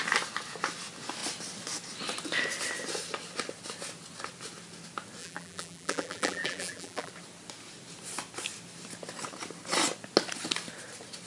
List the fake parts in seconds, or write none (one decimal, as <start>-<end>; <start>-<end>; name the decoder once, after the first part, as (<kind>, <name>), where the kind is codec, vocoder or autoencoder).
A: 5.2-7.1 (vocoder, BigVGAN v2)